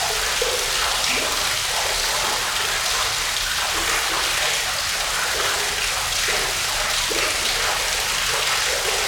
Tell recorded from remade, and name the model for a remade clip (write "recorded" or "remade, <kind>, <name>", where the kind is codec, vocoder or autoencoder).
recorded